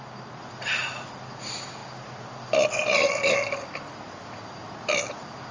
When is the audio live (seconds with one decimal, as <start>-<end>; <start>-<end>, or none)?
0.0-5.5